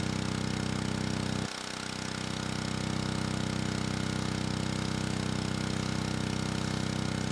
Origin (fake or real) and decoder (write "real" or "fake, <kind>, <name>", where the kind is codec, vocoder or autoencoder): real